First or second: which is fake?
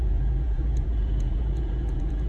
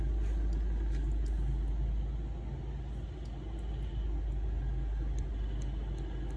first